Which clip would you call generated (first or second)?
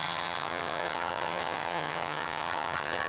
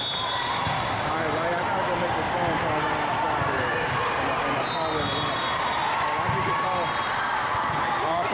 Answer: first